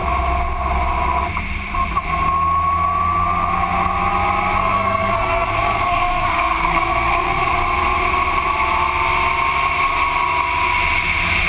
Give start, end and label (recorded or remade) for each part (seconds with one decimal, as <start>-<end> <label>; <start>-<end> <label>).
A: 0.0-4.6 recorded; 4.6-7.5 remade; 7.5-11.5 recorded